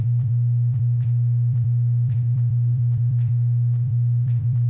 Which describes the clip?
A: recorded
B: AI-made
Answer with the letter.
B